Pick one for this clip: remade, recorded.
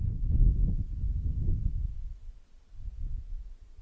recorded